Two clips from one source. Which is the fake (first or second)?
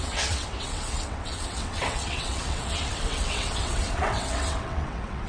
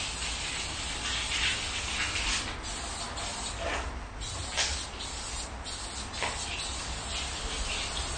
first